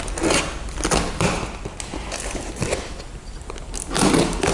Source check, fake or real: real